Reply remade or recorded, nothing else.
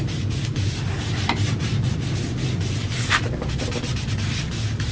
recorded